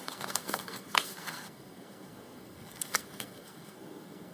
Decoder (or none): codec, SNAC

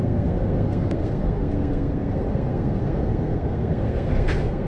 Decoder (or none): codec, SNAC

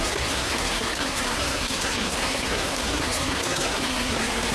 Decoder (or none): codec, SNAC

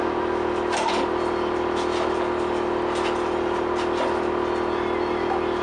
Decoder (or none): none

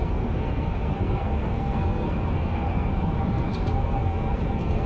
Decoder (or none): codec, SNAC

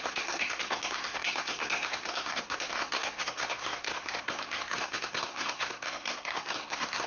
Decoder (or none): codec, SNAC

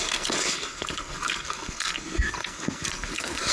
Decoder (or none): codec, SNAC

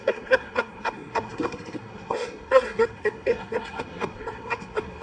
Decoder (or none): codec, SNAC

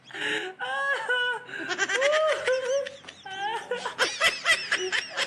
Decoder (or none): none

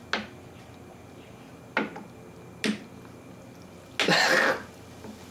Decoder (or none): none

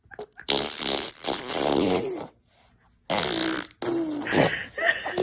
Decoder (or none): none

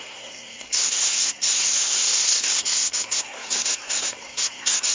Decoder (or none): codec, SNAC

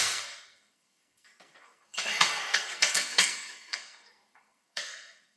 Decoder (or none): codec, SNAC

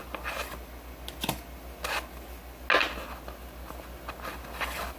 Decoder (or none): none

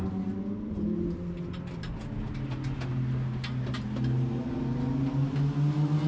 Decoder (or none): none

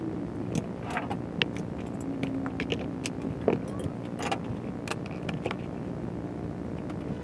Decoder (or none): none